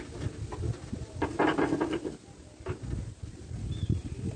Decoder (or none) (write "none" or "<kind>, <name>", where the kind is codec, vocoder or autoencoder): none